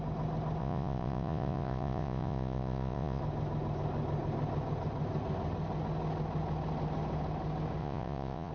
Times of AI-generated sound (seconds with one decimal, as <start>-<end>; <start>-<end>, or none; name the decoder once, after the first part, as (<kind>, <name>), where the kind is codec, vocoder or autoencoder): 0.6-3.2 (vocoder, Vocos); 7.8-8.5